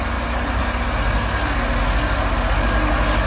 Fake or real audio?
real